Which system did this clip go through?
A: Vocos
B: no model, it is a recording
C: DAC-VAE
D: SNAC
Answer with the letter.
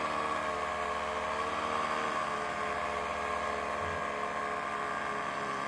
B